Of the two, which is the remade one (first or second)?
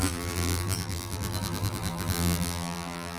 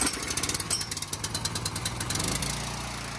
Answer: first